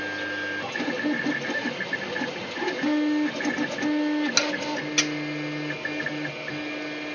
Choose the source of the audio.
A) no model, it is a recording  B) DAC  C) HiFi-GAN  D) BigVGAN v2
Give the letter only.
A